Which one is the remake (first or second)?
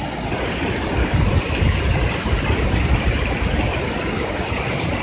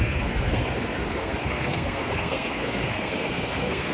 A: second